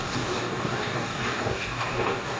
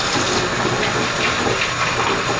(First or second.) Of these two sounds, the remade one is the first